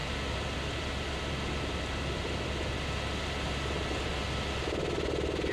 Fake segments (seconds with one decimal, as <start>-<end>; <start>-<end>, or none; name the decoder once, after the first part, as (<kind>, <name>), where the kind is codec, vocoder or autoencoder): 0.0-3.2 (vocoder, BigVGAN v2)